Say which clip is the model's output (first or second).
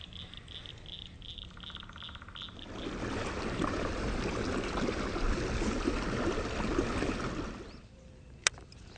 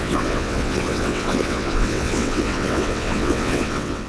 second